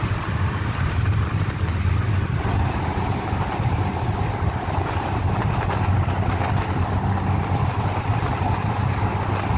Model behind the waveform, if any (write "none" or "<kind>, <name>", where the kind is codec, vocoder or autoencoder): none